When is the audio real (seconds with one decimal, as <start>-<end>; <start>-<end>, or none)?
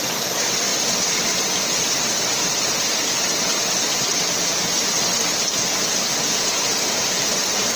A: 0.0-7.8